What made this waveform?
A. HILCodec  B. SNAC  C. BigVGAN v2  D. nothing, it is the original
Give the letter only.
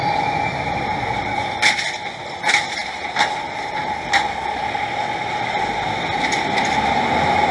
D